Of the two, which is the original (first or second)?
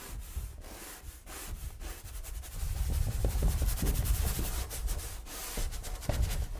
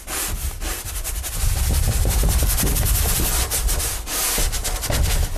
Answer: second